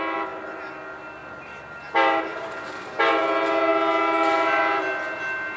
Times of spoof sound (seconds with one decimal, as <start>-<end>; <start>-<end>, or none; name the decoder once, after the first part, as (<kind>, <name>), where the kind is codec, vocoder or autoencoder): 1.2-1.8 (vocoder, BigVGAN v2); 2.3-3.2